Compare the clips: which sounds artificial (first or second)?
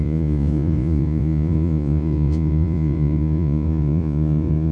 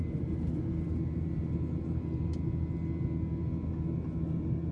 first